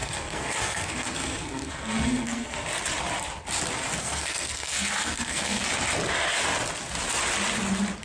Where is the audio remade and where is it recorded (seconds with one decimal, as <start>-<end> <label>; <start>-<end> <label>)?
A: 0.0-2.7 remade; 2.7-4.0 recorded; 4.0-5.6 remade; 5.6-8.0 recorded